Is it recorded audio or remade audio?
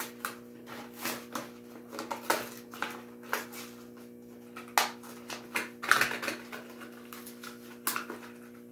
recorded